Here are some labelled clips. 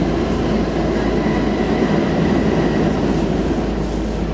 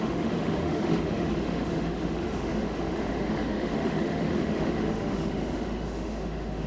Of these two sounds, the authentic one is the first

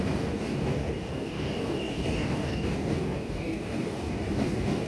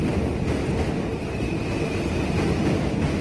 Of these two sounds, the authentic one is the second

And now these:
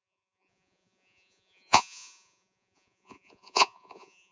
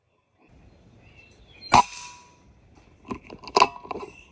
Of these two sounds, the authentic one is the second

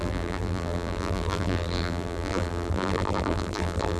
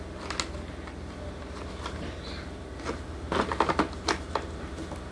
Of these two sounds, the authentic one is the second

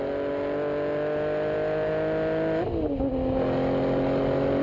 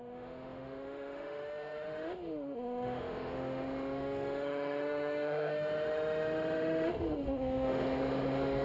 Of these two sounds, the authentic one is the first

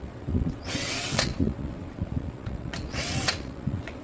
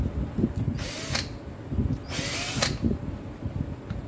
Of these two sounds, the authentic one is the second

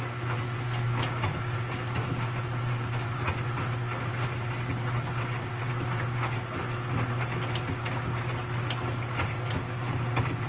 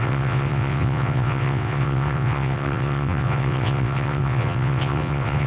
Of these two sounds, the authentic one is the first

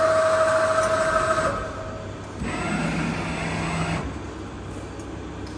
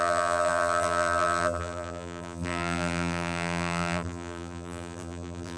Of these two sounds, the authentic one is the first